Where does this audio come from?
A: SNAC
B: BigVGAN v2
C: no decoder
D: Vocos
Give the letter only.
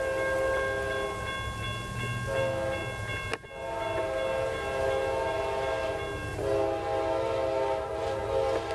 C